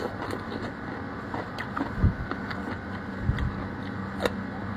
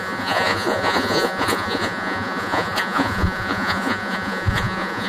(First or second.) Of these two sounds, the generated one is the second